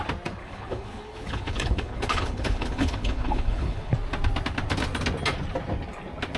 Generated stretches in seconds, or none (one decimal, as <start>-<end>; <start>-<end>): 0.4-3.9